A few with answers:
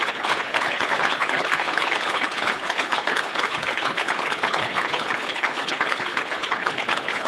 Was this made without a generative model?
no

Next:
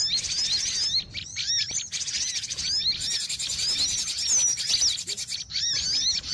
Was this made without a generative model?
yes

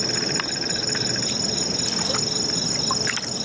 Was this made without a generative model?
yes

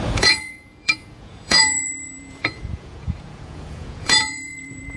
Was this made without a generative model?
no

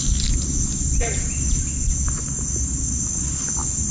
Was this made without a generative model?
yes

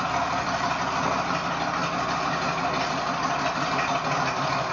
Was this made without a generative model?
yes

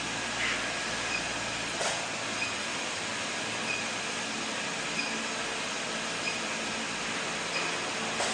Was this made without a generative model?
yes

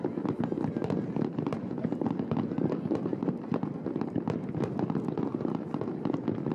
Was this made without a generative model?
yes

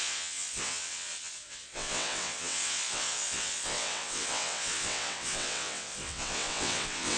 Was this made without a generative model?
no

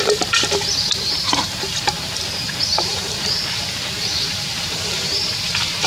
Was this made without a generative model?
no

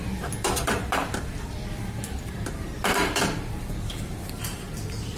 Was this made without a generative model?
no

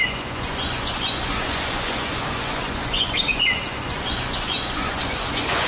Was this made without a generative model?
no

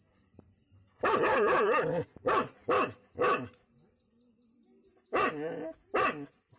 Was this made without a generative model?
yes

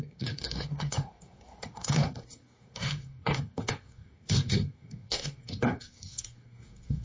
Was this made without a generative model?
no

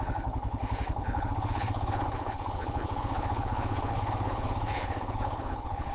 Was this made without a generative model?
no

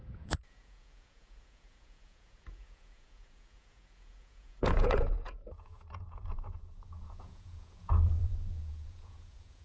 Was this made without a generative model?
no